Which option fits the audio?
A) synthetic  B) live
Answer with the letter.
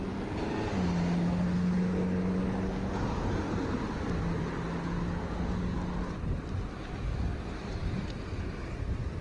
B